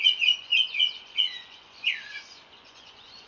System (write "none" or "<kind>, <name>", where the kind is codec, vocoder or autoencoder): vocoder, Vocos